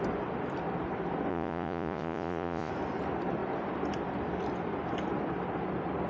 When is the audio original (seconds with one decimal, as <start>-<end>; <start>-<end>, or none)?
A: 0.0-1.3; 2.7-6.1